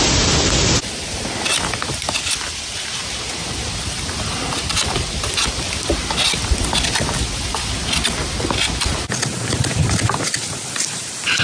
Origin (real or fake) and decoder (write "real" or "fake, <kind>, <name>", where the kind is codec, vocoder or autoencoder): real